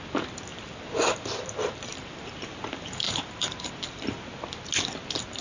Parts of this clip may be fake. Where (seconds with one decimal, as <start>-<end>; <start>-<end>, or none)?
0.5-3.7